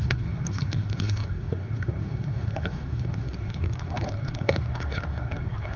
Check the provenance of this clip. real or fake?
fake